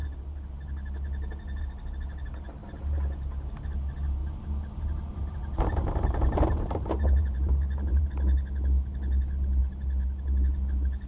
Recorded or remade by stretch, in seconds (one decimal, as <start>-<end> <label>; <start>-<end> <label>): 0.0-2.6 recorded; 2.6-3.5 remade; 3.5-4.2 recorded; 4.2-8.1 remade; 8.1-11.1 recorded